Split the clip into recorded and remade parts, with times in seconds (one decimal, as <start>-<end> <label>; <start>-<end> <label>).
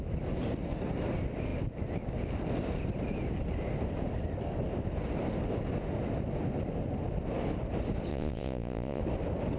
0.0-8.1 recorded; 8.1-9.0 remade; 9.0-9.6 recorded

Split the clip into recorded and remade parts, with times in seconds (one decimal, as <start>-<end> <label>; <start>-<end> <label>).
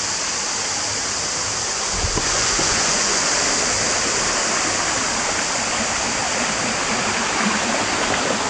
0.0-1.7 recorded; 1.7-3.3 remade; 3.3-8.5 recorded